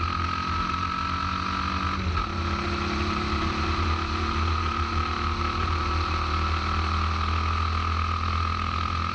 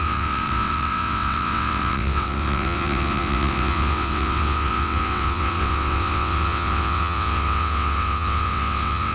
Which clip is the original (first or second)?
first